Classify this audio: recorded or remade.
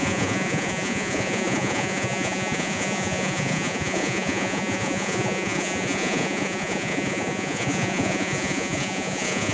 remade